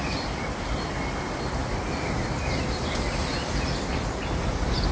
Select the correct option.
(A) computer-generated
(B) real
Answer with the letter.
B